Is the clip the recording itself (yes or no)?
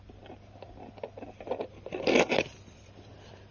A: no